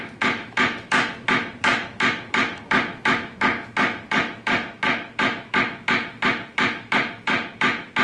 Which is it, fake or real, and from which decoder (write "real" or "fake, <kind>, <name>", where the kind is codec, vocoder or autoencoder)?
fake, autoencoder, DAC-VAE